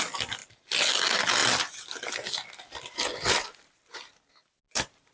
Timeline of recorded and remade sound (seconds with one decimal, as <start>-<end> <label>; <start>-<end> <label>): 0.0-5.1 recorded